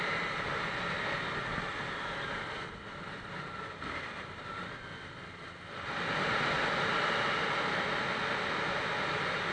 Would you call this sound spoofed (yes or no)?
no